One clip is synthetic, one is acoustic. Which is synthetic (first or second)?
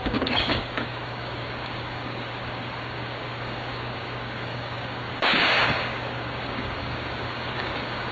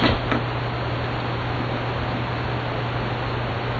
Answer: first